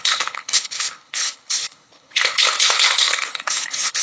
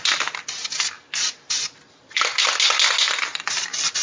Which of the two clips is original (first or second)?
second